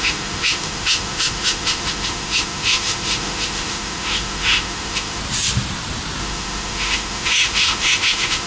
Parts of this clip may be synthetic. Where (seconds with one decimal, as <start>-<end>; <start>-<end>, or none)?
0.0-5.2; 6.2-8.5